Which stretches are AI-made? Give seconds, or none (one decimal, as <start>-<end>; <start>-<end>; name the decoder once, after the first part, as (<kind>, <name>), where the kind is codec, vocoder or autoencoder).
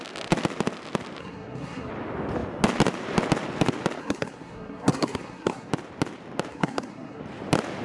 1.2-1.9 (codec, SNAC); 4.0-5.7; 6.5-7.2